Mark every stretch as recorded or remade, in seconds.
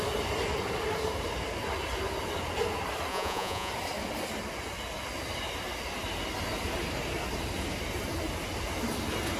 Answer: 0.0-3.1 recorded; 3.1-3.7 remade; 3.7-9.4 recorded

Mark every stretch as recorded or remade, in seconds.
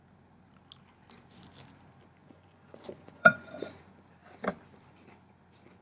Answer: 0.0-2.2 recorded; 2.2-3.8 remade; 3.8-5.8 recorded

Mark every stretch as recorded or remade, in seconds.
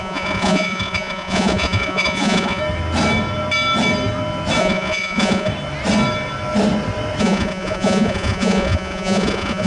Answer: 0.0-2.6 remade; 2.6-4.6 recorded; 4.6-5.5 remade; 5.5-7.2 recorded; 7.2-9.7 remade